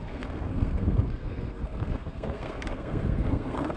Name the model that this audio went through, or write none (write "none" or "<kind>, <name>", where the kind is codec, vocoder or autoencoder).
codec, SNAC